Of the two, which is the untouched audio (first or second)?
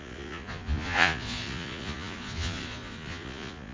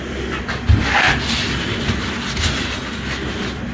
second